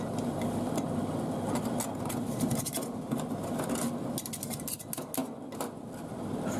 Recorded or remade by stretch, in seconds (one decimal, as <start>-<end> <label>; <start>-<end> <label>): 0.0-5.2 recorded; 5.2-6.1 remade; 6.1-6.6 recorded